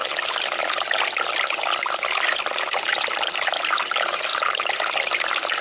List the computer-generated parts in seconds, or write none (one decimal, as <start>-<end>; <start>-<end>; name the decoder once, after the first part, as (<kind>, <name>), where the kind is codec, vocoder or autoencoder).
none